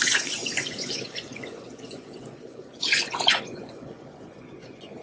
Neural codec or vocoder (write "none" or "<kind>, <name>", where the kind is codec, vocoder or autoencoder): vocoder, Vocos